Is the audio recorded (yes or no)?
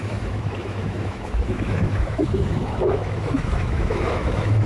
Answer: no